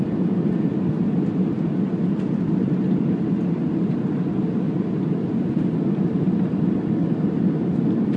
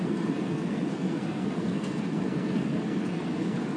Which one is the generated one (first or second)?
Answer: second